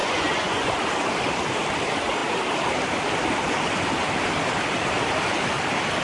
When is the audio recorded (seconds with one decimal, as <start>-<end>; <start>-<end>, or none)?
0.7-6.0